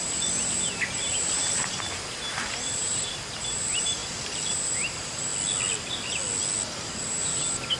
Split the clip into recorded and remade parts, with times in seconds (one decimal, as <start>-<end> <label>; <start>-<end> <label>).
0.0-4.0 remade; 4.0-4.5 recorded; 4.5-5.3 remade; 5.3-6.8 recorded; 6.8-7.8 remade